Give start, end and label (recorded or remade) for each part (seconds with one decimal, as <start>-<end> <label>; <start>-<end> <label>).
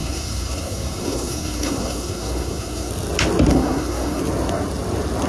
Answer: 0.0-2.9 remade; 2.9-3.5 recorded; 3.5-4.2 remade; 4.2-5.3 recorded